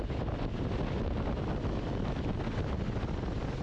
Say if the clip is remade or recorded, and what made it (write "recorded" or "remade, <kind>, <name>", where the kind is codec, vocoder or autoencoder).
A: recorded